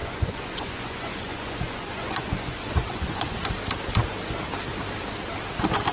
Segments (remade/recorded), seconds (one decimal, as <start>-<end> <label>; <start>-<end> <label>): 0.0-3.5 remade; 3.5-5.9 recorded